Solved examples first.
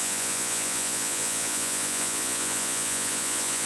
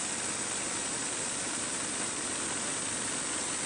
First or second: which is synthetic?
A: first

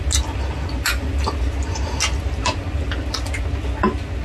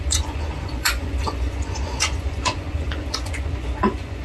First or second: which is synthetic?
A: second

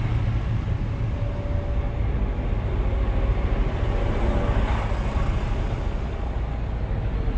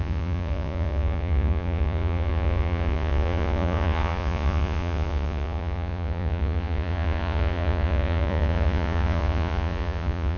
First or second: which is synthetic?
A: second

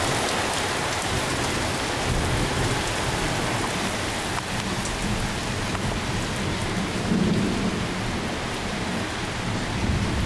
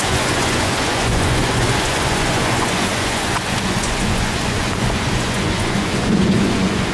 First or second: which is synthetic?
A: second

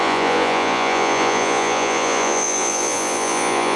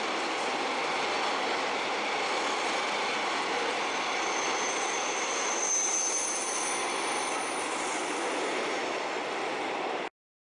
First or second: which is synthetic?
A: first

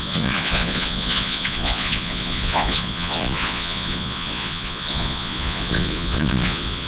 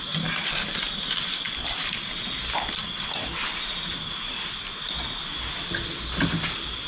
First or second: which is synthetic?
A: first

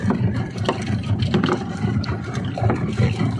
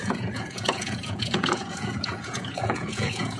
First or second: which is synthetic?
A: second